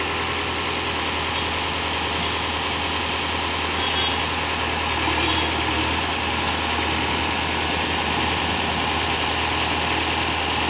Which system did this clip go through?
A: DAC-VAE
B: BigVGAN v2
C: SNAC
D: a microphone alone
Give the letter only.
D